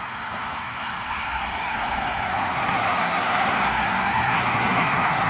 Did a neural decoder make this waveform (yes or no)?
yes